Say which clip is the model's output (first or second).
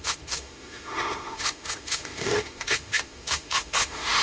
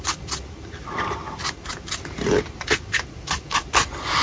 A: first